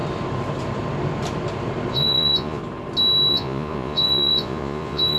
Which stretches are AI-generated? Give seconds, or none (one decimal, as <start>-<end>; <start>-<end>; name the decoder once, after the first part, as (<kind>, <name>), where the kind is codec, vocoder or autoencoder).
1.9-2.6 (vocoder, Vocos); 3.3-5.2